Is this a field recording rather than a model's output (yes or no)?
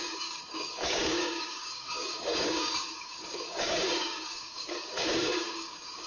no